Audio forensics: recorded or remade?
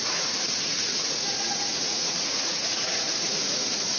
remade